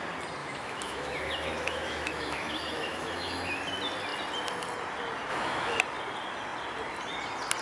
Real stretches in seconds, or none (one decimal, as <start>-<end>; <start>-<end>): 0.0-0.4; 3.6-5.3; 5.8-7.6